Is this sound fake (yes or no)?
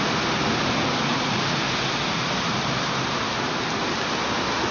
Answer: no